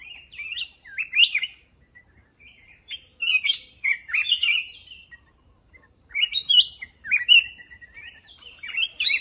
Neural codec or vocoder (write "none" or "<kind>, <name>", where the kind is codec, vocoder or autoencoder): vocoder, BigVGAN v2